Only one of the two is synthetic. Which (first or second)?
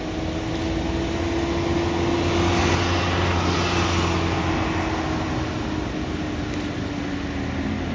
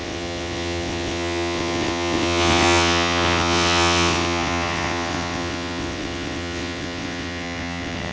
second